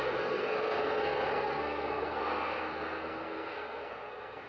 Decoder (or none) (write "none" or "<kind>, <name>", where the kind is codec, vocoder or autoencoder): codec, SNAC